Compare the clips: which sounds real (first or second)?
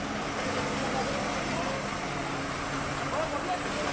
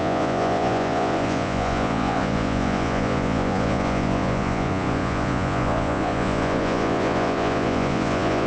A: first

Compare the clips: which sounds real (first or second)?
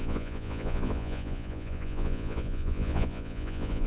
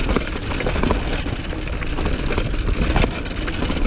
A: second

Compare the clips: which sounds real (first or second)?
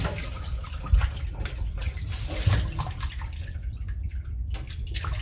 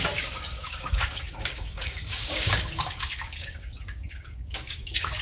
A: first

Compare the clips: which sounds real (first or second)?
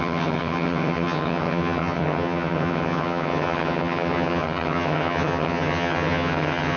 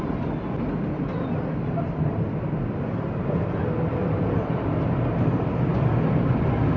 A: second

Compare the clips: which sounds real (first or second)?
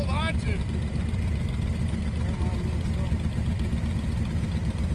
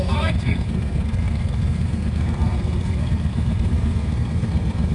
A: first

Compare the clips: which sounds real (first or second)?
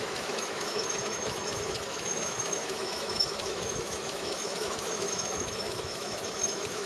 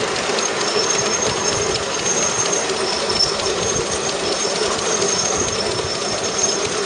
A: second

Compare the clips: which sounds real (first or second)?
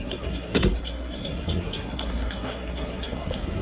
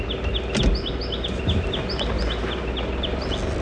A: second